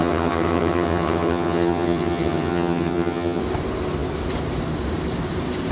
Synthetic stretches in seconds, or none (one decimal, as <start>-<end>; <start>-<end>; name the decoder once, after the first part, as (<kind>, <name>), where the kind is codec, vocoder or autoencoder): 0.0-3.4 (vocoder, HiFi-GAN)